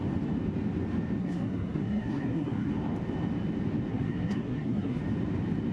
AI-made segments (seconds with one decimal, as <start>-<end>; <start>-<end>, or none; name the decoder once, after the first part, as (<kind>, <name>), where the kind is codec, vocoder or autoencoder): 1.2-2.7 (codec, SNAC); 3.9-5.0

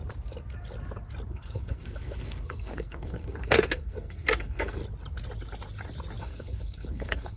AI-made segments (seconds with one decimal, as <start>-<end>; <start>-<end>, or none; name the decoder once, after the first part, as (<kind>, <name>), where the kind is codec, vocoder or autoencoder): 1.3-4.8 (codec, SNAC); 6.2-7.4

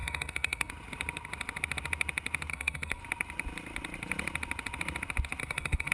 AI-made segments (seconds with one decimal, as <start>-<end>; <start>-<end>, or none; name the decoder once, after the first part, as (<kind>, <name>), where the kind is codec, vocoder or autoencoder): 0.0-0.7 (codec, SNAC); 2.5-3.0; 5.4-5.9

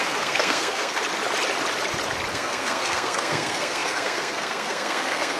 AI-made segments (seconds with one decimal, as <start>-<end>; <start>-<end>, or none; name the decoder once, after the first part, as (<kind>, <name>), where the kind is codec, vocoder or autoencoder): 0.0-1.0 (codec, SNAC); 2.3-5.4

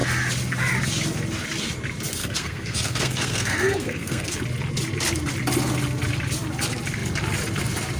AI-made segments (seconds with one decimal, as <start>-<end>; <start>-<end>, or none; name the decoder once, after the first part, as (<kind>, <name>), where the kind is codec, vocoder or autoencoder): 2.2-4.4 (codec, SNAC)

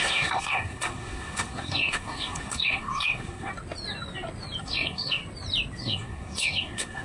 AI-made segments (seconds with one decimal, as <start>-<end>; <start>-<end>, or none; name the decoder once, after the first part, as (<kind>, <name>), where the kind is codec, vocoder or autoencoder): 0.0-3.5 (codec, SNAC); 4.6-5.2; 5.8-7.0

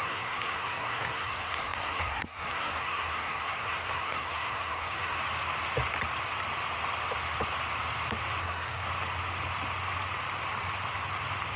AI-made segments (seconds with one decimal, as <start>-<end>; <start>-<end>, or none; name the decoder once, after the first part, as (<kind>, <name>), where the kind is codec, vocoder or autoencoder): 0.0-5.2 (codec, SNAC); 8.4-8.8